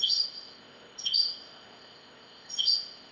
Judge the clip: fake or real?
fake